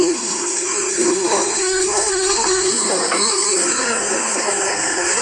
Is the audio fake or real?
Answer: fake